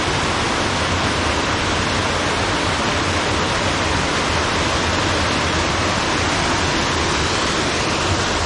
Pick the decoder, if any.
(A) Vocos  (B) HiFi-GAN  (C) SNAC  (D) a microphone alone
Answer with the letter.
D